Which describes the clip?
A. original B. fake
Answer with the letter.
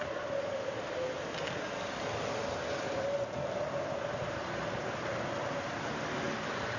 A